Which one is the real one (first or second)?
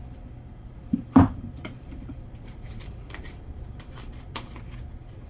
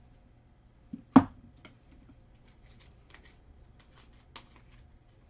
second